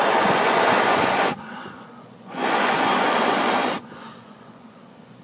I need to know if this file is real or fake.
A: fake